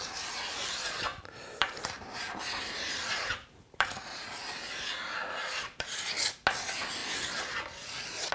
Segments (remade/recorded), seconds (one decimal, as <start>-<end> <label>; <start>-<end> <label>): 0.0-1.1 recorded; 1.1-4.6 remade; 4.6-5.2 recorded; 5.2-6.1 remade; 6.1-8.3 recorded